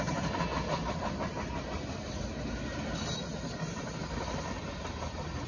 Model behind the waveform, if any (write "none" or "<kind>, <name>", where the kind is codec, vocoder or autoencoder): none